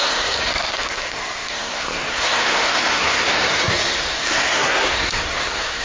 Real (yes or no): no